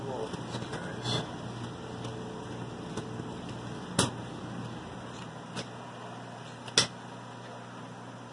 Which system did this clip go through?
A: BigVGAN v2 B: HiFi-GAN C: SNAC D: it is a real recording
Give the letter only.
D